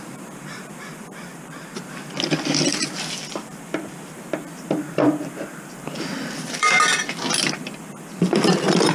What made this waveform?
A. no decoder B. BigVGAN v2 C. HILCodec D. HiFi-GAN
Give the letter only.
B